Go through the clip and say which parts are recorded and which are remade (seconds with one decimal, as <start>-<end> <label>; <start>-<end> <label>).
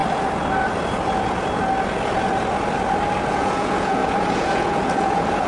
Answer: 0.0-3.3 recorded; 3.3-5.5 remade